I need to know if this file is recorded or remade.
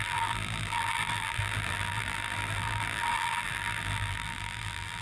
remade